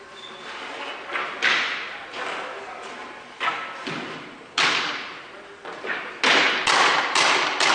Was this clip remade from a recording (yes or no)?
no